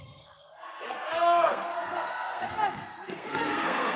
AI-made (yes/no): yes